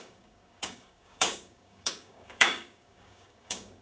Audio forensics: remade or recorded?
remade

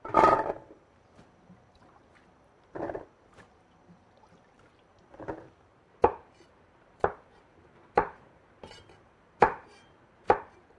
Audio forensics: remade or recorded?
remade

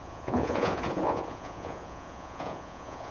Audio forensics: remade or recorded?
remade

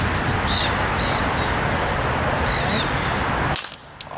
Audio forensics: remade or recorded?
recorded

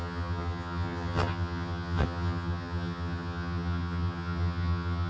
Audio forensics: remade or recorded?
remade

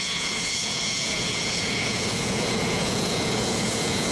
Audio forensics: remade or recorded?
remade